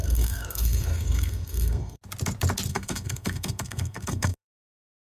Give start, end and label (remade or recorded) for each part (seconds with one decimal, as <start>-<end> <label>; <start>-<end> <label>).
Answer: 0.0-2.0 remade; 2.0-2.7 recorded; 2.7-5.1 remade